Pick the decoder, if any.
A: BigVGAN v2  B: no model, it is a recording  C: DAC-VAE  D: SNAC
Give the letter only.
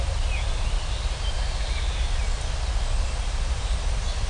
B